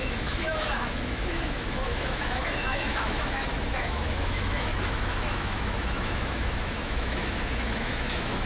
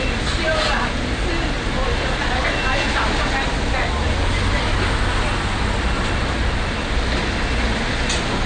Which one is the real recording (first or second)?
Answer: second